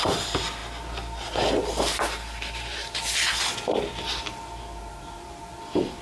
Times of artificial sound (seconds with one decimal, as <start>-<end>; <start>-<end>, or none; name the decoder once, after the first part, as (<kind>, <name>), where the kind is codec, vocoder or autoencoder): none